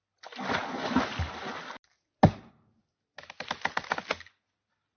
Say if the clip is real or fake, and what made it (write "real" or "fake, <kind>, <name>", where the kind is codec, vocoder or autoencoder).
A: real